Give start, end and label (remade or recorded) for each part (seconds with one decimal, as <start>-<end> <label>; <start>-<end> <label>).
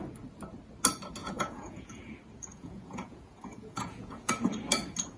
0.0-1.2 recorded; 1.2-2.1 remade; 2.1-2.5 recorded; 2.5-4.3 remade; 4.3-5.2 recorded